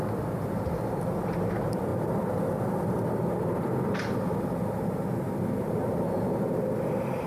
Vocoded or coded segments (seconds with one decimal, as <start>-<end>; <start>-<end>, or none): 0.0-7.3